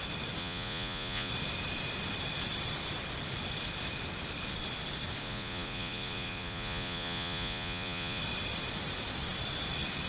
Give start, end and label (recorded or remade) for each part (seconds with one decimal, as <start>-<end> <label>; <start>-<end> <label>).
0.0-0.4 recorded; 0.4-1.3 remade; 1.3-5.2 recorded; 5.2-8.2 remade; 8.2-10.1 recorded